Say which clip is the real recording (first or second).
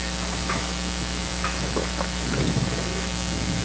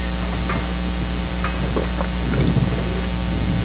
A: second